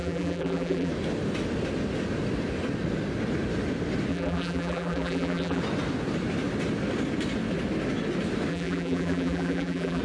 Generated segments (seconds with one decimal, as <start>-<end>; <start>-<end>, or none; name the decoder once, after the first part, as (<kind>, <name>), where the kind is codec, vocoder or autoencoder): 0.0-0.9 (vocoder, BigVGAN v2); 4.1-5.6; 8.5-10.0